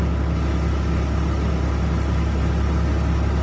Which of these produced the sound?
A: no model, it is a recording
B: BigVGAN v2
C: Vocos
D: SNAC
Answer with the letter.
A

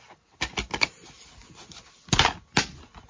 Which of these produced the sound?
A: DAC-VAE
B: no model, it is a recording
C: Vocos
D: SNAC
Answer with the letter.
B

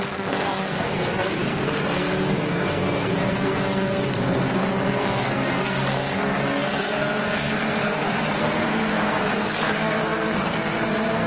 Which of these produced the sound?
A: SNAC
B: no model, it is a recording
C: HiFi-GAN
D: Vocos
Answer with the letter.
A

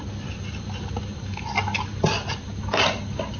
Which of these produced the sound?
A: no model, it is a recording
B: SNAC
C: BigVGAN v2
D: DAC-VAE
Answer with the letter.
A